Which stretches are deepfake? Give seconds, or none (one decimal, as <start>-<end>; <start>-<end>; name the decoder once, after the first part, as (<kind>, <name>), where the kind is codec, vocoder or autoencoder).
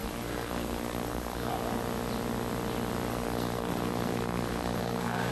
0.0-1.5 (codec, SNAC); 3.1-5.3